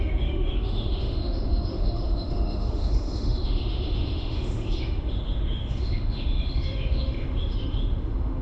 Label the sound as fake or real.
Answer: fake